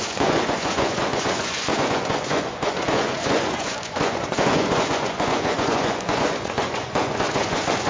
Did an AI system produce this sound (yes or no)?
yes